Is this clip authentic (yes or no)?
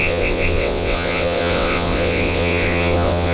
no